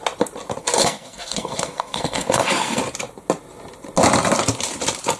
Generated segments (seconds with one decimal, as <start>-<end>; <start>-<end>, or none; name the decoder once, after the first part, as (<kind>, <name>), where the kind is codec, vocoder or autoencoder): 0.6-2.8 (codec, SNAC)

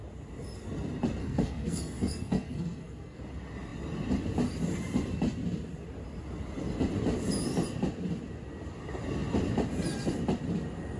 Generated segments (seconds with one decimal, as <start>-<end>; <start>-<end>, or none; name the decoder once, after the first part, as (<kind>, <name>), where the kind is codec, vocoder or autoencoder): 1.2-3.2 (codec, SNAC)

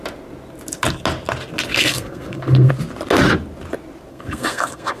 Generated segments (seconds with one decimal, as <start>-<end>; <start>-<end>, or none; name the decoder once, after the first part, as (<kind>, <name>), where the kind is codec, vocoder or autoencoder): 1.7-2.7 (codec, SNAC); 4.1-5.0

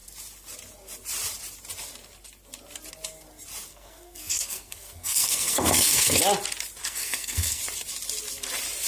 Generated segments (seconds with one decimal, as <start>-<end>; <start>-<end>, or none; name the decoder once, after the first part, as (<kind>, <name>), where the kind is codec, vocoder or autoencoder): 3.7-6.2 (codec, SNAC); 6.8-7.6

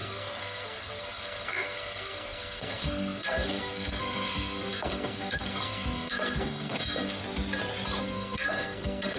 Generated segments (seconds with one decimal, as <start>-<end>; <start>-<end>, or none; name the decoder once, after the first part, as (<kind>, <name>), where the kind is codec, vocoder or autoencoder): 0.0-7.2 (codec, SNAC); 8.0-9.2

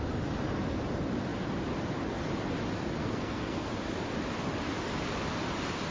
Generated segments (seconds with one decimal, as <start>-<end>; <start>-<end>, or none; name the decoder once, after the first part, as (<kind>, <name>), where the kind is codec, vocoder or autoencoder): 3.0-3.7 (codec, SNAC)

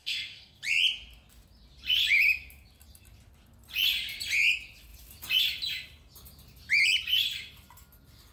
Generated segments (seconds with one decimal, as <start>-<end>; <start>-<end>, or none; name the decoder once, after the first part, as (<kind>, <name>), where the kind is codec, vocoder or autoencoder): 0.0-0.6 (codec, SNAC)

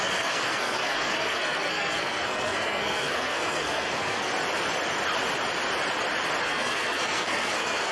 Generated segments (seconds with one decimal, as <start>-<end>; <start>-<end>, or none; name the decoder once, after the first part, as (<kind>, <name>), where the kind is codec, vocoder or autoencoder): 0.0-4.3 (codec, SNAC); 6.4-7.9